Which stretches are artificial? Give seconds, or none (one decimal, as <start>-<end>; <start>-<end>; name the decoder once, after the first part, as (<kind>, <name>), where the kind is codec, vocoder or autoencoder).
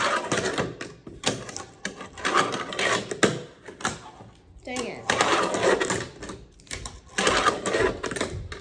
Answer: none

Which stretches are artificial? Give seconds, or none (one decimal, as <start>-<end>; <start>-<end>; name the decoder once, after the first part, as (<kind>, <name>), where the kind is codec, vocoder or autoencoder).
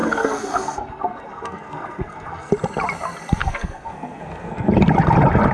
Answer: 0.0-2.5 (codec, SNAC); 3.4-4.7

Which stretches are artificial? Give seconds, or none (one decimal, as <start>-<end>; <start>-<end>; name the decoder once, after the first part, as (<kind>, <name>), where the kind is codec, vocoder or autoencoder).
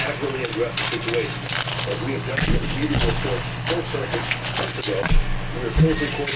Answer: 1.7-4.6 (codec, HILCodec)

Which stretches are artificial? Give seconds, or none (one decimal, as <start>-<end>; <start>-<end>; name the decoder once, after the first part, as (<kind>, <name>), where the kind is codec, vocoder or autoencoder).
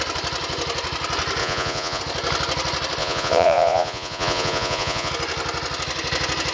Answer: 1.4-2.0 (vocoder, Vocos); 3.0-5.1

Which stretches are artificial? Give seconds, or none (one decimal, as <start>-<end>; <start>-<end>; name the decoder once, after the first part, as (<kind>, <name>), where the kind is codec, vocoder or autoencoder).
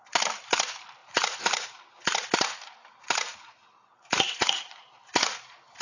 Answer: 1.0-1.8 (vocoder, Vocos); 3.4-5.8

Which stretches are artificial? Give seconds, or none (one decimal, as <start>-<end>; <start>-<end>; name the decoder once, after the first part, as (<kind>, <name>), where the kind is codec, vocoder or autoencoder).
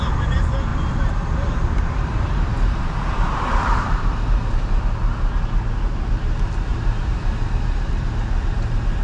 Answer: 0.7-4.8 (vocoder, BigVGAN v2); 6.7-8.2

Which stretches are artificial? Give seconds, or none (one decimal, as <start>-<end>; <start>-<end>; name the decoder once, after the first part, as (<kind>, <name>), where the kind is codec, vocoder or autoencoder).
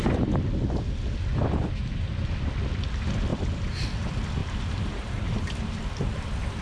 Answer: 1.4-2.1 (vocoder, BigVGAN v2); 3.3-3.8; 4.4-5.8